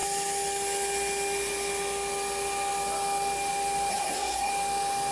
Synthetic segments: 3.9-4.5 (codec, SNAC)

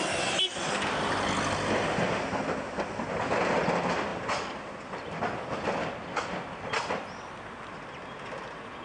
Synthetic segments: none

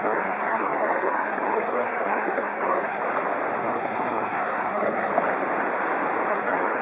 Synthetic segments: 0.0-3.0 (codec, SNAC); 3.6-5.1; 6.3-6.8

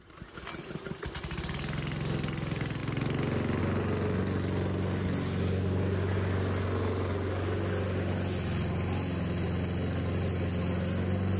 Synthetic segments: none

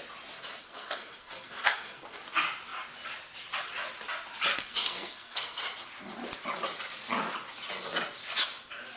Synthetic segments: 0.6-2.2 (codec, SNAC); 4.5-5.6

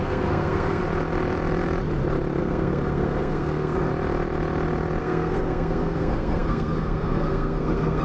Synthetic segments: 0.0-0.8 (codec, SNAC); 2.4-3.9; 5.0-8.0

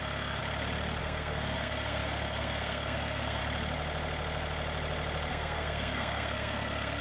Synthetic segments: 0.0-0.4 (codec, SNAC); 1.0-3.4; 5.3-7.0